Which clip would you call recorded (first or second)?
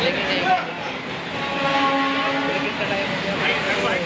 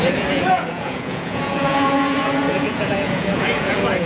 first